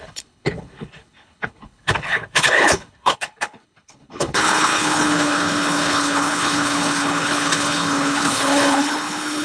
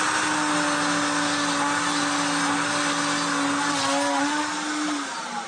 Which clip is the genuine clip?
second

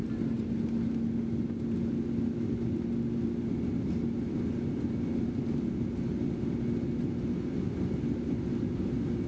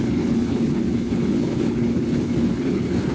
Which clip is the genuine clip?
first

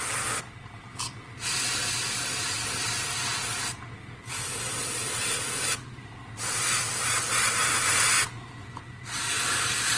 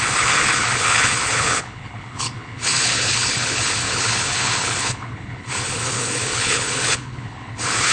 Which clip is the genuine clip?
first